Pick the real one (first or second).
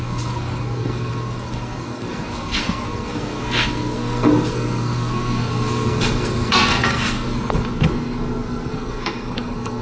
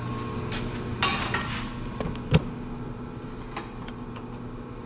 second